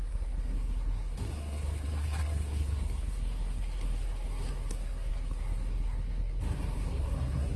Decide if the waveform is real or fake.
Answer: fake